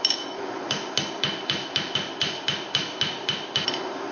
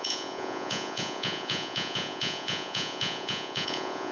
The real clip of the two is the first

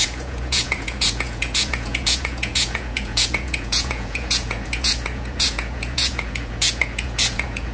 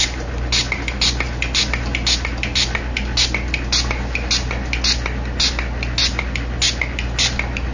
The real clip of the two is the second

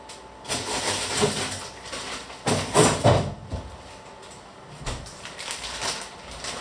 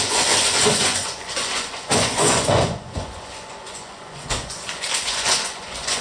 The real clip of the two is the first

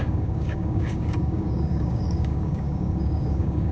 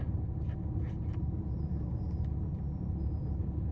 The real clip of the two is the second